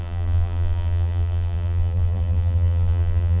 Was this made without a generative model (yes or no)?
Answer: no